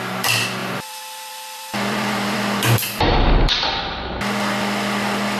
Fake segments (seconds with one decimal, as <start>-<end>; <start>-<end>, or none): 0.6-3.8